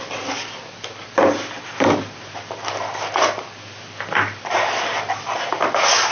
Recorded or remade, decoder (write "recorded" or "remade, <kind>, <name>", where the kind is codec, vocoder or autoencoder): recorded